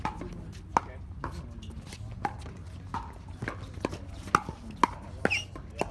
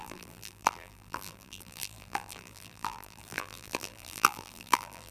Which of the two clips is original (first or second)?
first